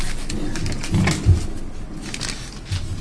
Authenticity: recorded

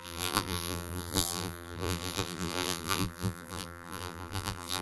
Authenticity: remade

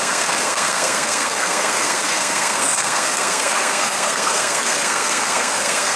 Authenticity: remade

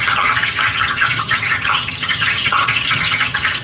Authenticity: remade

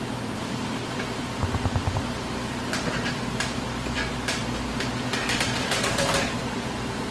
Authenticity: remade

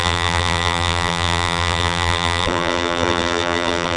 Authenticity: remade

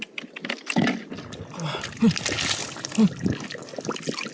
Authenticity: recorded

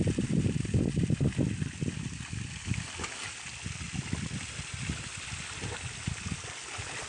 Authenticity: recorded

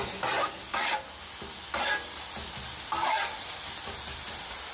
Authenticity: recorded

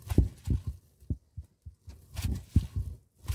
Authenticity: recorded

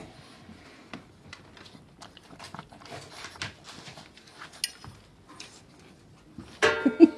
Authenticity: recorded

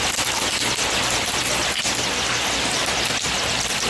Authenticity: recorded